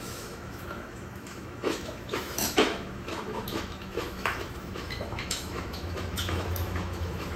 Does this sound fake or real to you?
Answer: fake